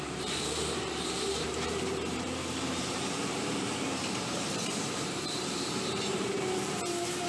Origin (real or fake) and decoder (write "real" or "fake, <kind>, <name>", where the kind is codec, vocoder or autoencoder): fake, vocoder, BigVGAN v2